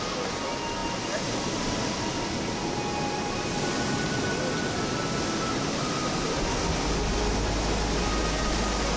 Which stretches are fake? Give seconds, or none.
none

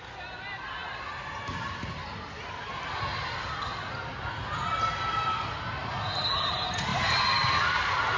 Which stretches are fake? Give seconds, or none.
none

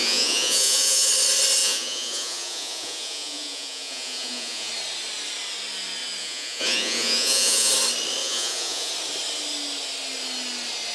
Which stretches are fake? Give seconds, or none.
0.0-1.1 (vocoder, Vocos); 1.6-4.7; 6.2-7.7; 8.2-8.9

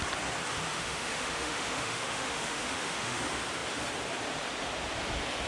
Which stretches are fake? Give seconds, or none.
0.7-3.2 (autoencoder, DAC-VAE)

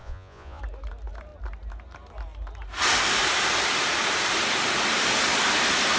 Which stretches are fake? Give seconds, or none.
0.0-0.6 (vocoder, Vocos)

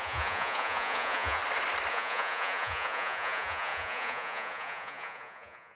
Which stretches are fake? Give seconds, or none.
0.0-1.4 (vocoder, Vocos); 1.9-5.7

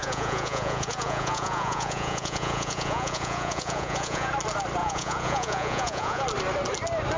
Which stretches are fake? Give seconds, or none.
0.0-4.3 (vocoder, Vocos); 4.8-6.2